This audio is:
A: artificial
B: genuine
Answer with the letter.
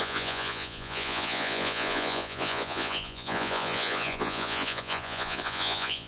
A